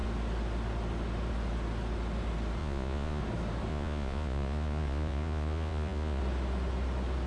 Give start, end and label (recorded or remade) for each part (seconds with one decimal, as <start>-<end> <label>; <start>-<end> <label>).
0.0-2.6 recorded; 2.6-3.2 remade; 3.2-3.7 recorded; 3.7-6.2 remade; 6.2-7.3 recorded